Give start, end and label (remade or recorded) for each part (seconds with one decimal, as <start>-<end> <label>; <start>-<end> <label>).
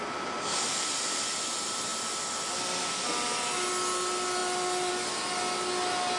0.0-6.2 recorded